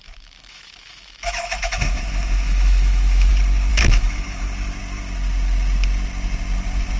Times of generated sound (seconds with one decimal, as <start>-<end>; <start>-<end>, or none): 0.0-3.3; 3.7-4.4